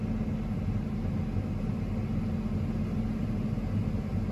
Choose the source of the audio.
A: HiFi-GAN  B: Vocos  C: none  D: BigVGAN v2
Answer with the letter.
C